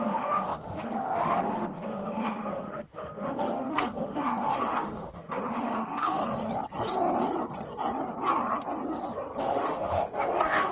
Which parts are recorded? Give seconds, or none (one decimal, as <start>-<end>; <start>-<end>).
6.2-9.4